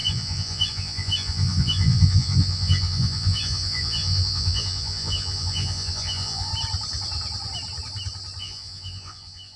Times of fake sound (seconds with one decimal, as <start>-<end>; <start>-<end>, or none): 0.0-6.5; 8.4-9.6

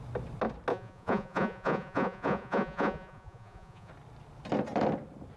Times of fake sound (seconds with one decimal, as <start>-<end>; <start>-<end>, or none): 0.7-3.9

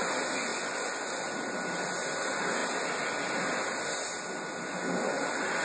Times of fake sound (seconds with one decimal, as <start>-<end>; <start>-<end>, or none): 0.5-1.2